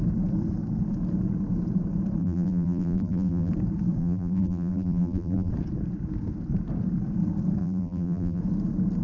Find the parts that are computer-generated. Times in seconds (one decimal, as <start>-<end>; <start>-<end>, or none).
2.2-3.5; 4.0-5.5; 7.6-8.4